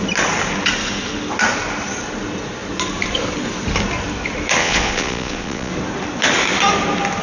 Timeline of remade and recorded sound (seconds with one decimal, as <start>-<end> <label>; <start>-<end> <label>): 0.0-4.6 recorded; 4.6-5.7 remade; 5.7-7.2 recorded